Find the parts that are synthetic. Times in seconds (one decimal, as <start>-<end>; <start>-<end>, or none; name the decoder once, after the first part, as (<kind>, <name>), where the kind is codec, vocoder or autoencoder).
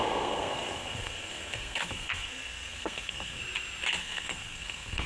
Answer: 0.0-3.4 (codec, SNAC); 4.0-5.1